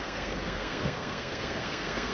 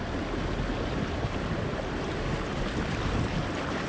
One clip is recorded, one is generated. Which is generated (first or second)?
first